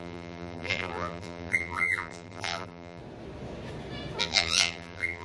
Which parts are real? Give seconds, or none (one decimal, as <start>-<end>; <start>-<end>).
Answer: 3.0-4.2

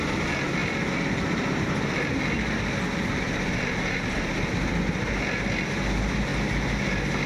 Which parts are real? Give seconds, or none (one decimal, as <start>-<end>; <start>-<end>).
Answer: 0.0-7.3